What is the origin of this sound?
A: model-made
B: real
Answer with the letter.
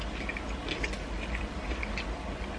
B